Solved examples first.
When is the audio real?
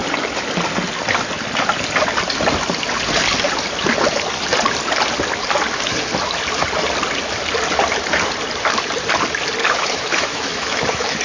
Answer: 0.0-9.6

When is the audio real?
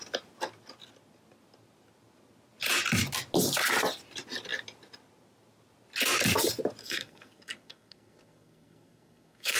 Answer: 0.0-6.8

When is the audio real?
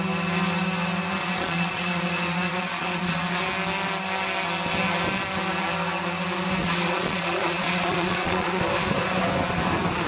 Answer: 0.0-1.2; 3.4-6.6; 8.6-10.1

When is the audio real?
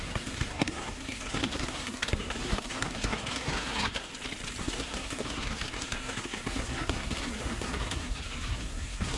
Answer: 4.1-4.6